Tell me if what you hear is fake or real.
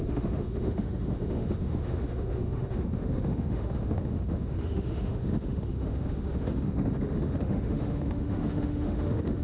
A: fake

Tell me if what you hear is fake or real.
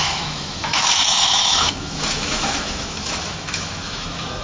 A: fake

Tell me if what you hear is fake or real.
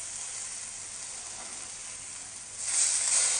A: real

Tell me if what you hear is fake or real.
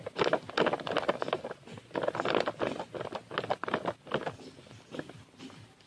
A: real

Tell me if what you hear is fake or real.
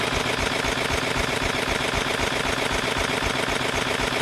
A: real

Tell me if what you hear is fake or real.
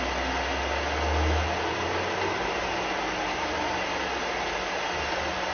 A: real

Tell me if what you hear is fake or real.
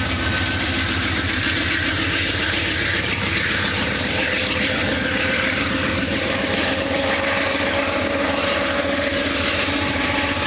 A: fake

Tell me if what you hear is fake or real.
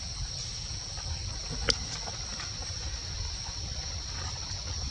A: real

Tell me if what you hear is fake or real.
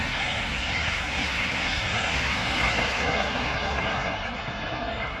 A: fake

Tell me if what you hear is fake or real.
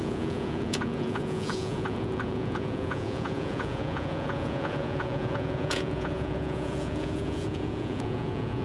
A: fake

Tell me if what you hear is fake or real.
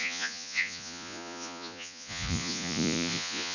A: fake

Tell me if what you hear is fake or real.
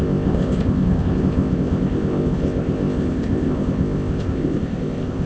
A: fake